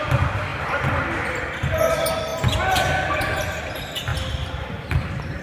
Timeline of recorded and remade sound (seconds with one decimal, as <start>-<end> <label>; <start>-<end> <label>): 0.0-5.4 recorded